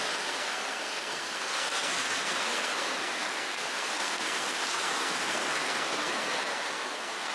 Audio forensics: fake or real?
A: fake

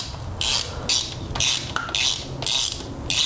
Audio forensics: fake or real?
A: real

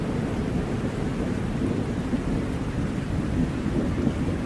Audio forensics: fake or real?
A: real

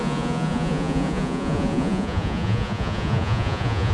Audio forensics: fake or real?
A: fake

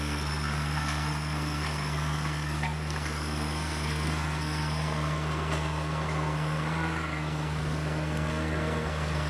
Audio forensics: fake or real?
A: fake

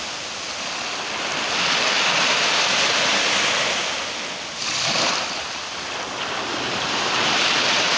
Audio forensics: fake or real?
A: fake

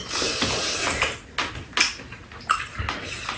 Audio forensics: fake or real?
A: real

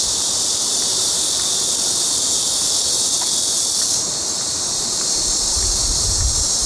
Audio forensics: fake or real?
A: fake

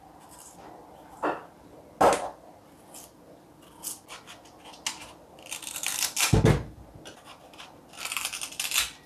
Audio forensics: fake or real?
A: real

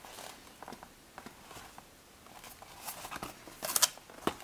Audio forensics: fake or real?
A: real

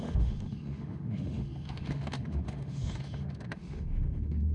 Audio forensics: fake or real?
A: fake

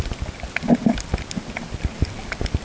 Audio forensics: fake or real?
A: real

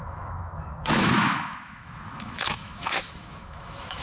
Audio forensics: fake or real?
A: fake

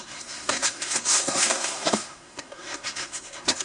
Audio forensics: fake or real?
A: fake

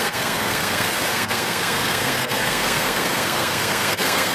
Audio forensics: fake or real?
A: fake